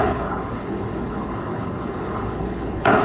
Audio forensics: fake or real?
fake